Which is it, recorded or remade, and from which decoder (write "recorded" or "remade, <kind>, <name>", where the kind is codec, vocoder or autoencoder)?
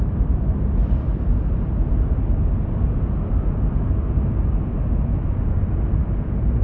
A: recorded